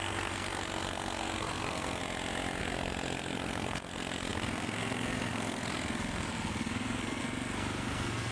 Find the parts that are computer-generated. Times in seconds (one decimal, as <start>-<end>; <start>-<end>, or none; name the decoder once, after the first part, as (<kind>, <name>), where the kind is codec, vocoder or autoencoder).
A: 0.0-2.0 (codec, SNAC); 2.6-8.3